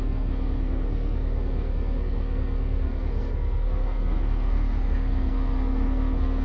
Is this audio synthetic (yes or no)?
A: yes